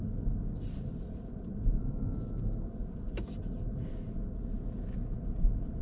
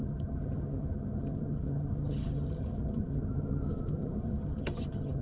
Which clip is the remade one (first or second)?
second